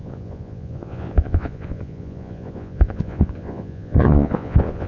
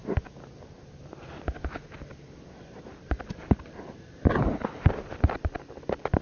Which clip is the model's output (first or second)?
first